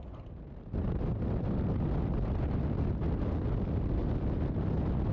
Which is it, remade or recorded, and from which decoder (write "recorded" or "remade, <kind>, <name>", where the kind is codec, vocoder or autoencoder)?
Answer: recorded